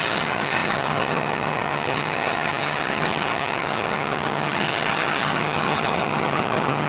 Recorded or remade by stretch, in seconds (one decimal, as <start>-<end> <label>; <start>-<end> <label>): 0.0-6.9 remade